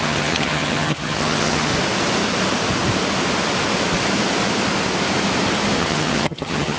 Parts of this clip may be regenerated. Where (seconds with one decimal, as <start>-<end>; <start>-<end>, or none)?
0.0-1.7; 5.8-6.8